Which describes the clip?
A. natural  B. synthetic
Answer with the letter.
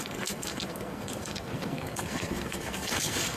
B